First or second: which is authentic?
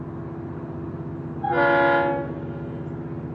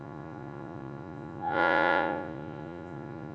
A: first